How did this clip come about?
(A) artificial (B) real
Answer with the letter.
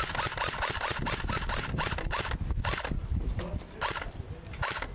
B